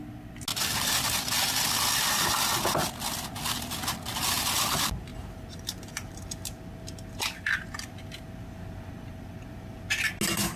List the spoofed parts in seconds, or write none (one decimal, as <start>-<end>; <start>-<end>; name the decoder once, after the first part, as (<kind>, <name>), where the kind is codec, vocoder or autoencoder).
5.1-5.9 (vocoder, BigVGAN v2)